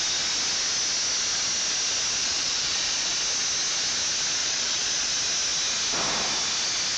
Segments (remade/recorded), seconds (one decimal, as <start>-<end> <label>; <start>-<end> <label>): 0.0-2.2 recorded; 2.2-3.1 remade; 3.1-4.4 recorded; 4.4-5.1 remade; 5.1-7.0 recorded